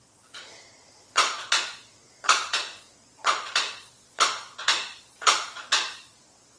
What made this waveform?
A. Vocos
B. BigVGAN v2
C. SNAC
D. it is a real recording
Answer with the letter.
A